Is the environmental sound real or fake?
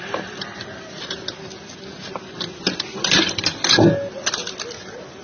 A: real